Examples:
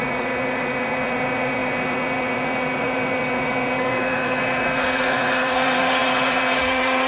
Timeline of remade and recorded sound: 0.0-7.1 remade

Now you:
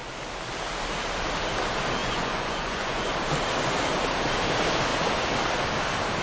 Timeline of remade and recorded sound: 0.0-2.0 recorded; 2.0-3.1 remade; 3.1-6.2 recorded

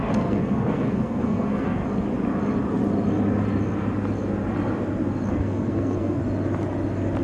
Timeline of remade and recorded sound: 0.0-1.8 remade; 1.8-5.3 recorded; 5.3-6.2 remade; 6.2-7.2 recorded

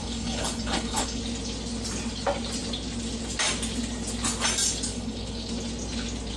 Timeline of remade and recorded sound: 0.0-1.2 remade; 1.2-4.9 recorded; 4.9-5.5 remade; 5.5-6.4 recorded

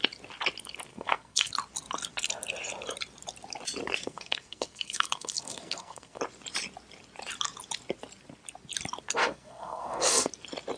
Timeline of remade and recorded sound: 0.0-0.9 recorded; 0.9-1.5 remade; 1.5-4.0 recorded; 4.0-6.2 remade; 6.2-9.2 recorded; 9.2-10.3 remade; 10.3-10.8 recorded

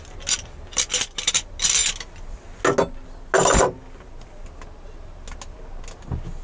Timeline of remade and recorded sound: 0.0-6.4 recorded

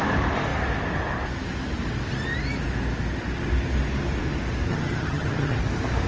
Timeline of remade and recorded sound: 0.0-4.7 recorded; 4.7-5.6 remade; 5.6-6.1 recorded